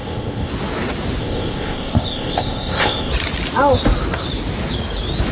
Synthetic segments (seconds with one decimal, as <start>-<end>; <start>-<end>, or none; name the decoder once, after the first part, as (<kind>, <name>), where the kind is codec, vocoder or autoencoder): 0.0-0.5 (codec, ZipCodec); 1.2-3.1